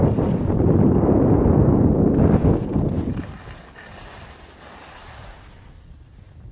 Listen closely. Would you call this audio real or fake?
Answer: real